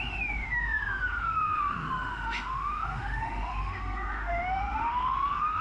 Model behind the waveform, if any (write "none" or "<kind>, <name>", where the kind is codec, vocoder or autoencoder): autoencoder, DAC-VAE